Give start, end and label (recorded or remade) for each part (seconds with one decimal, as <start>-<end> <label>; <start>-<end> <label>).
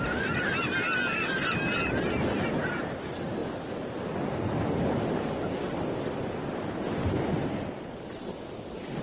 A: 0.0-9.0 recorded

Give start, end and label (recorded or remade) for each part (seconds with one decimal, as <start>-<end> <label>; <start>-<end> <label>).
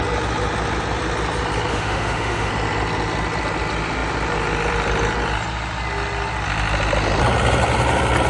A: 0.0-1.7 recorded; 1.7-2.5 remade; 2.5-8.3 recorded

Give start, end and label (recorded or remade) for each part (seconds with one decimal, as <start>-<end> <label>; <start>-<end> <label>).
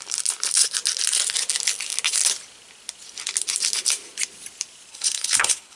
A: 0.0-4.9 recorded; 4.9-5.8 remade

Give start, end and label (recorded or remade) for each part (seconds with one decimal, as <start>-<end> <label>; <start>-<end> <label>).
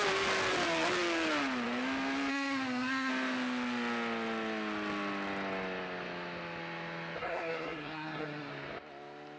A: 0.0-2.3 recorded; 2.3-3.1 remade; 3.1-7.2 recorded; 7.2-8.5 remade; 8.5-9.4 recorded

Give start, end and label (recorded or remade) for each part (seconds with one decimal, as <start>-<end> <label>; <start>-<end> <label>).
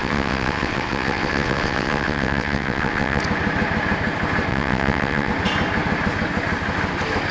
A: 0.0-3.2 remade; 3.2-4.5 recorded; 4.5-5.3 remade; 5.3-7.3 recorded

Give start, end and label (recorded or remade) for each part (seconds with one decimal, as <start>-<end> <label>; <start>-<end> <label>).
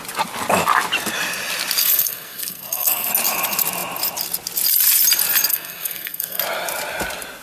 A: 0.0-1.8 recorded; 1.8-3.1 remade; 3.1-5.5 recorded; 5.5-6.4 remade; 6.4-7.4 recorded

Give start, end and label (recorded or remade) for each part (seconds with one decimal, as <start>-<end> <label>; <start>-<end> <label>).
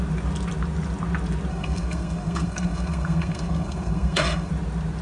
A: 0.0-1.5 recorded; 1.5-4.5 remade; 4.5-5.0 recorded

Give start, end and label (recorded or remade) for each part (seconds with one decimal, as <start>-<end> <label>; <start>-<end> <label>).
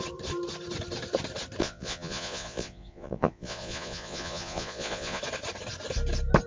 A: 0.0-1.6 recorded; 1.6-5.2 remade; 5.2-6.5 recorded